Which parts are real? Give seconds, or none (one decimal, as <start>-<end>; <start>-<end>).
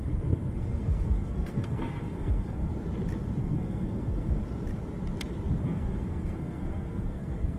2.7-3.4; 4.4-5.6